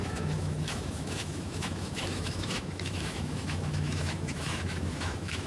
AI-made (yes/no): yes